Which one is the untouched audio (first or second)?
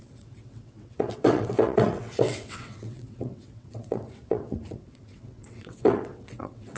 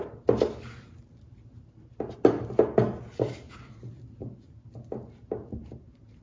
second